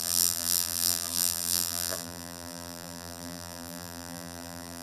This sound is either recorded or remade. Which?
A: remade